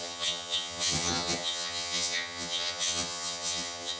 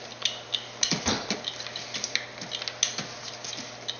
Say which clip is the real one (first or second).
second